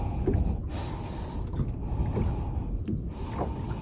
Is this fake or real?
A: real